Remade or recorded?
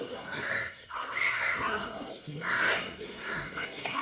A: remade